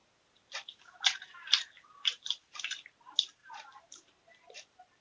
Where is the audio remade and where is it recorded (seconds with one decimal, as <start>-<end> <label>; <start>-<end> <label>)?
0.0-3.0 remade; 3.0-3.4 recorded; 3.4-5.0 remade